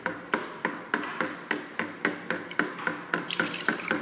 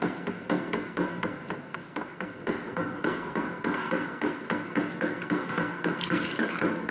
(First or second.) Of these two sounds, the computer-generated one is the second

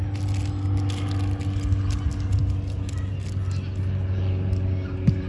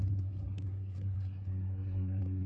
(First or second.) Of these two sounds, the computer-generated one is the second